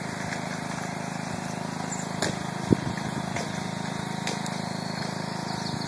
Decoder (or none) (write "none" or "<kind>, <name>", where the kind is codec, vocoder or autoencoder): none